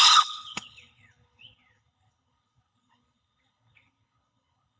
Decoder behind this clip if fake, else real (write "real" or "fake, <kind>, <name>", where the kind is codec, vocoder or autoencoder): fake, codec, HILCodec